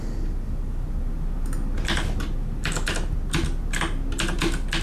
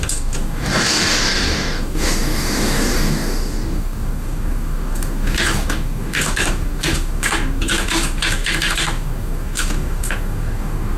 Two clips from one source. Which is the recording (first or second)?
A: first